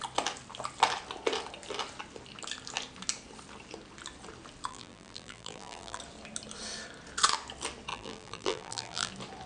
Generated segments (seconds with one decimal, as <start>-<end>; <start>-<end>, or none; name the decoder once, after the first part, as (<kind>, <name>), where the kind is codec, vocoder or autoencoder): 4.7-6.0 (vocoder, BigVGAN v2); 7.9-9.1